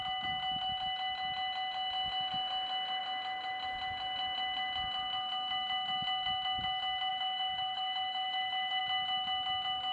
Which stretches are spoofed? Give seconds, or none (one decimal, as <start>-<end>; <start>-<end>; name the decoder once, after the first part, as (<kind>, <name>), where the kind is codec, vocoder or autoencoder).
7.1-8.8 (autoencoder, DAC-VAE)